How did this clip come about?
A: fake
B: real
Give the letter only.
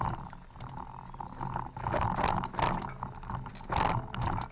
B